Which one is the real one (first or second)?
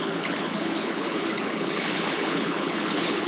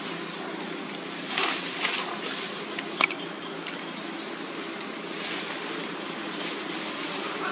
second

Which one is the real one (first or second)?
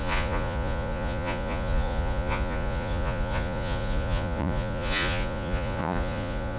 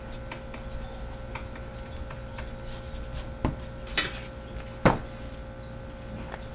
second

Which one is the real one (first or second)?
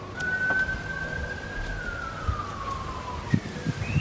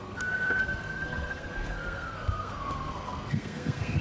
first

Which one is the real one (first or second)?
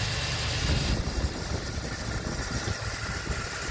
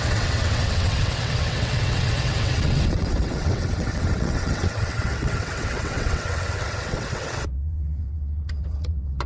first